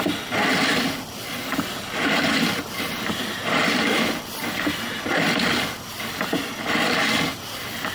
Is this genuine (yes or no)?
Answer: no